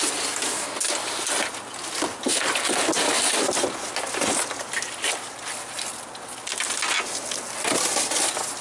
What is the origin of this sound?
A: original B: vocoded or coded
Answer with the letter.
A